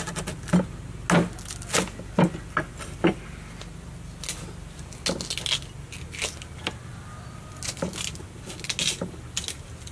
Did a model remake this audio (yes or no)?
no